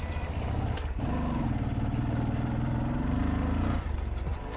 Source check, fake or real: real